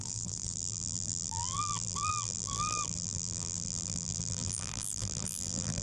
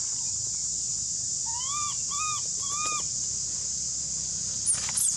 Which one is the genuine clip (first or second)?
second